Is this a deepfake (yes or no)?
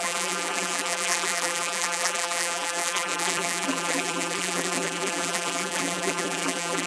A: yes